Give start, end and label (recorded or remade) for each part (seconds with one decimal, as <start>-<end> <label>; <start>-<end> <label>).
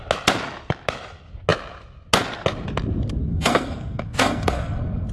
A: 0.0-3.3 recorded; 3.3-5.1 remade